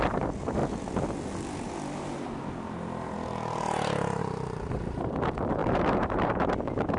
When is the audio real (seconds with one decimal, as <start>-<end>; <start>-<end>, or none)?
0.6-4.2